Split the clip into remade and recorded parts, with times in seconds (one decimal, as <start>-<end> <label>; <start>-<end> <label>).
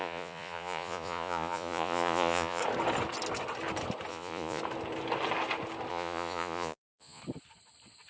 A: 0.0-2.6 remade; 2.6-4.1 recorded; 4.1-4.6 remade; 4.6-5.9 recorded; 5.9-7.2 remade; 7.2-8.1 recorded